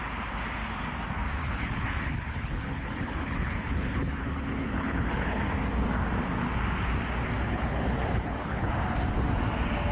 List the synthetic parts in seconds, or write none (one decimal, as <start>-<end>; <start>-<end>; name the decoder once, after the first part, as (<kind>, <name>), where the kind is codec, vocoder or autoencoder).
1.4-5.4 (codec, HILCodec); 7.4-8.7